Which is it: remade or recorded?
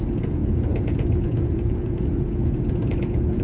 remade